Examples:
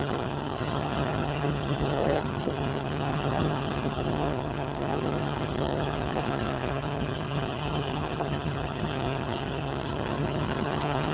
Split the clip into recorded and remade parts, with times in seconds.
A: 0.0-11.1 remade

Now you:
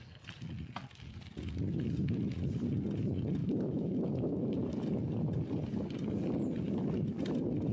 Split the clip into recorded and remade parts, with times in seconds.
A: 0.0-3.4 recorded; 3.4-4.4 remade; 4.4-7.7 recorded

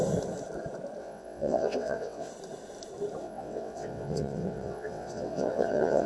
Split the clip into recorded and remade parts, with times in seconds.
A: 0.0-1.0 recorded; 1.0-2.3 remade; 2.3-3.2 recorded; 3.2-6.1 remade

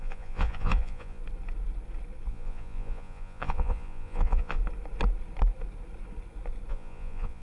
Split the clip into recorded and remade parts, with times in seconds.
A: 0.0-1.2 remade; 1.2-2.3 recorded; 2.3-4.6 remade; 4.6-6.7 recorded; 6.7-7.4 remade